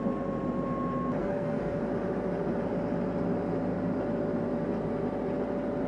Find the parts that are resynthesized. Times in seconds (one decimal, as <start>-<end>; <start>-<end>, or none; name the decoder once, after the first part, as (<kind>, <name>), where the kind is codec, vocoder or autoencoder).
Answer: 1.2-1.8 (codec, SNAC)